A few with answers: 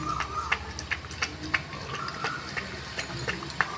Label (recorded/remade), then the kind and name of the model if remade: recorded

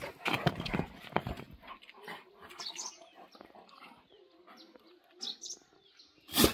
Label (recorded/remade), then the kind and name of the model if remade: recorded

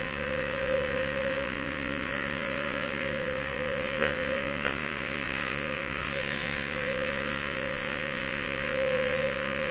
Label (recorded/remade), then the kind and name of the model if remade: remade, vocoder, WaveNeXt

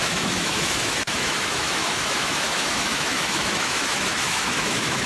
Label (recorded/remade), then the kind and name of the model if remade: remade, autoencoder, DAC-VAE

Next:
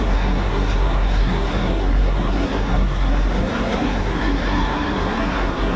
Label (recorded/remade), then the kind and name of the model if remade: remade, codec, SNAC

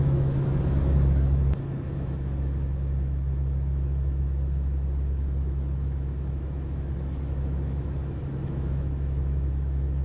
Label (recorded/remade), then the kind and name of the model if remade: remade, autoencoder, DAC-VAE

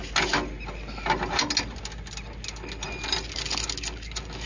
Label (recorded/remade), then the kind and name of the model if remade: recorded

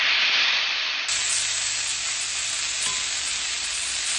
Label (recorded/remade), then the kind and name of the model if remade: recorded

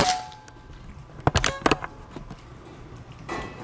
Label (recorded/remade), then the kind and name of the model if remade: recorded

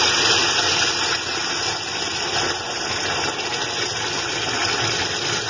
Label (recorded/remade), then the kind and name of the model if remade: recorded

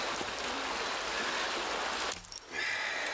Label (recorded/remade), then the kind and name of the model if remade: recorded